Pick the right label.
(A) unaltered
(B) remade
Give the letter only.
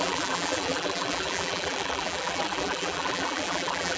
B